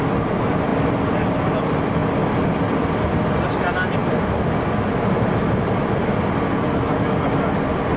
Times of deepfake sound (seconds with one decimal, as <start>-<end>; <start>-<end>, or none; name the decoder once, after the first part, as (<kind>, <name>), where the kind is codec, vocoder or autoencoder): 0.7-1.5 (vocoder, BigVGAN v2); 2.0-3.1; 4.0-5.9